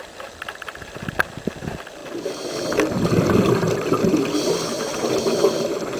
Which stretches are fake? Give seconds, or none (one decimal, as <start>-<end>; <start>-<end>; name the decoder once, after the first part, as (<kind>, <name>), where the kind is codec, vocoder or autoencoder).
none